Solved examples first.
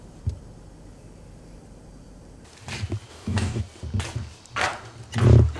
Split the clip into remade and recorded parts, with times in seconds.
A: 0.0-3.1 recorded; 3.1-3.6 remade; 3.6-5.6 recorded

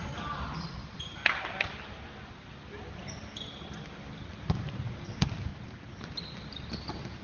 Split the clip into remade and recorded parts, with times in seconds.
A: 0.0-7.2 recorded

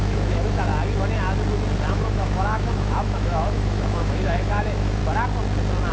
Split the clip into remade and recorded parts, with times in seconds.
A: 0.0-0.7 remade; 0.7-1.9 recorded; 1.9-5.0 remade; 5.0-5.9 recorded

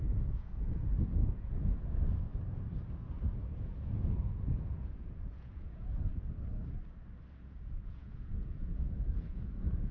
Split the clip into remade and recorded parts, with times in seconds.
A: 0.0-2.3 remade; 2.3-3.3 recorded; 3.3-6.1 remade; 6.1-7.4 recorded; 7.4-9.9 remade